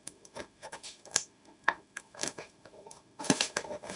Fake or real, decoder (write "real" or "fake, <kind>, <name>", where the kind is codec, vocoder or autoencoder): fake, autoencoder, DAC-VAE